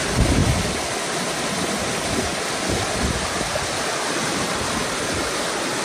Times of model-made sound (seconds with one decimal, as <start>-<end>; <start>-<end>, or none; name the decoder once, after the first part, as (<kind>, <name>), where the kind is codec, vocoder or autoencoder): 0.4-1.2 (vocoder, BigVGAN v2)